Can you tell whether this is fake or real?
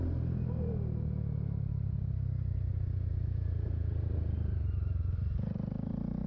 real